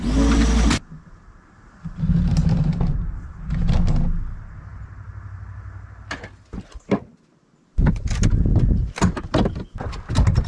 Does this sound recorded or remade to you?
recorded